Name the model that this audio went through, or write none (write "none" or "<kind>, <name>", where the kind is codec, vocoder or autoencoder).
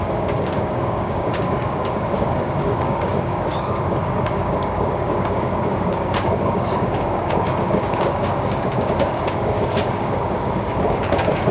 codec, DAC